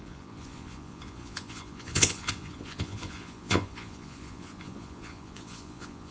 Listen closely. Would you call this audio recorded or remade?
remade